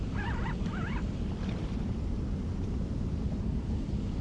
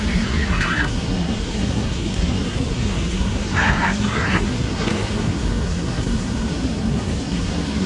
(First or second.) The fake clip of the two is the second